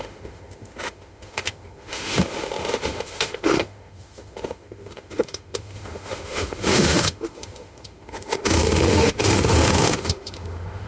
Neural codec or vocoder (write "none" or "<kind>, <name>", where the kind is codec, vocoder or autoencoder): autoencoder, DAC-VAE